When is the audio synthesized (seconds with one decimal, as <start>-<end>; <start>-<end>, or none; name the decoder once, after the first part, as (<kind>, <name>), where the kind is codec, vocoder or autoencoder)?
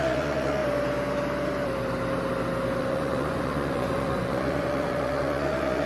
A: 0.0-0.6 (vocoder, Vocos); 2.8-5.9